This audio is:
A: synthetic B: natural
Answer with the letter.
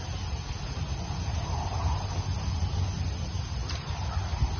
B